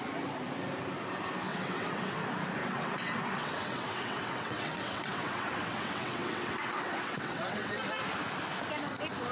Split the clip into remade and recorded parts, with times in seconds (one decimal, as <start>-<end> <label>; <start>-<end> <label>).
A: 0.0-1.5 recorded; 1.5-2.2 remade; 2.2-2.6 recorded; 2.6-7.8 remade; 7.8-9.3 recorded